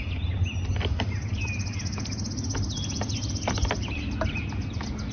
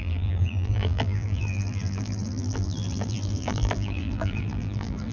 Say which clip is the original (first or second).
first